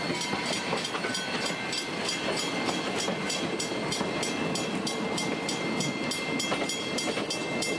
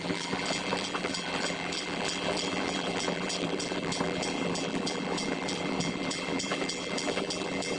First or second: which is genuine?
first